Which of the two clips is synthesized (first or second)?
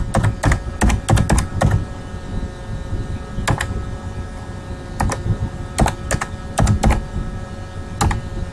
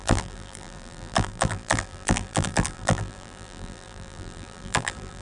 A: second